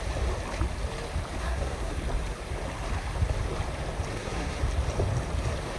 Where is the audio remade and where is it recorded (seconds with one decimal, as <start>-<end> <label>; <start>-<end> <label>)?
0.0-1.4 recorded; 1.4-1.9 remade; 1.9-4.1 recorded; 4.1-4.6 remade; 4.6-5.8 recorded